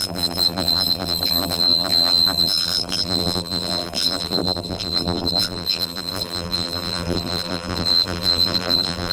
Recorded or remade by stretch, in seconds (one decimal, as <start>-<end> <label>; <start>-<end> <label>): 0.0-9.1 remade